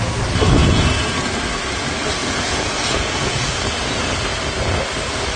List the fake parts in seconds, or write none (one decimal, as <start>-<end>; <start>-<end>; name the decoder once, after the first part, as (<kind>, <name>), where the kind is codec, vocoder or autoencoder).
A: 0.6-1.2 (vocoder, Vocos); 2.2-3.5